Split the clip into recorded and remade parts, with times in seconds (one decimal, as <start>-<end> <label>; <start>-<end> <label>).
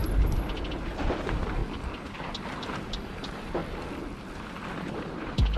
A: 0.0-0.7 recorded; 0.7-1.6 remade; 1.6-2.6 recorded; 2.6-3.6 remade; 3.6-4.9 recorded; 4.9-5.6 remade